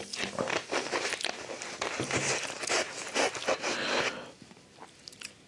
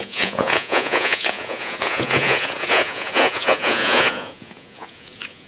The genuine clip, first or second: first